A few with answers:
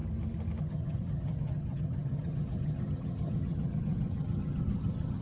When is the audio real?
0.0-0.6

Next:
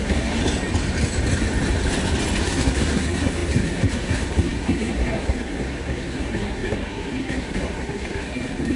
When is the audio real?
0.4-2.4

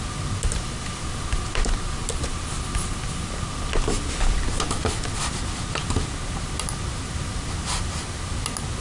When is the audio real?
0.0-8.8

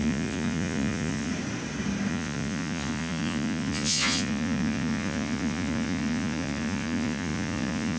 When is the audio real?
1.3-2.1

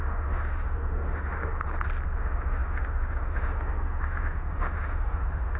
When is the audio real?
1.5-2.2

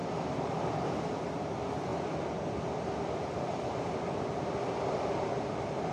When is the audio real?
1.9-5.4

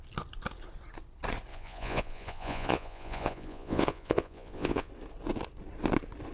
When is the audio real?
0.0-1.5; 4.9-6.3

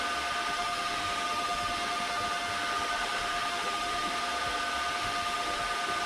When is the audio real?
0.0-0.4; 4.1-5.0; 5.6-6.1